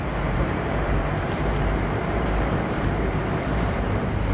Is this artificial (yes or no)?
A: yes